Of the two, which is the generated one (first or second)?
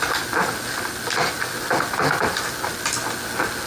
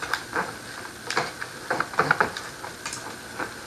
second